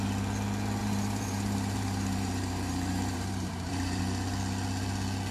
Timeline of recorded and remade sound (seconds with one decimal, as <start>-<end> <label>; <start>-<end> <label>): 0.0-0.8 recorded; 0.8-4.0 remade; 4.0-5.3 recorded